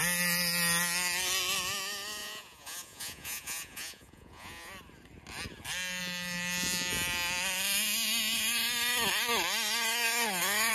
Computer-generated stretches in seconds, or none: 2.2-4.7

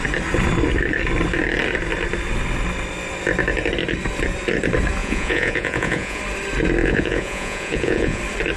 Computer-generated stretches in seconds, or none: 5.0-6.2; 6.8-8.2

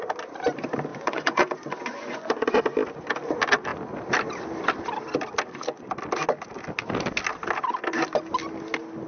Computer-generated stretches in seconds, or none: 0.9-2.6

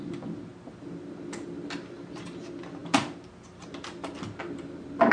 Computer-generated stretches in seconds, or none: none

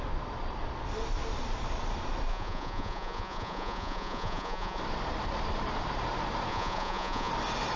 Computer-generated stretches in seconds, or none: 2.3-4.8; 6.5-7.3

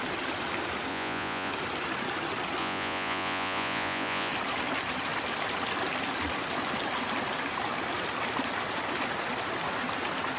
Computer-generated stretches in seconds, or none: 0.9-1.5; 2.6-4.3